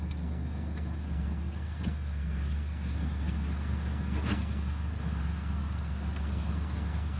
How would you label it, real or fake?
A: fake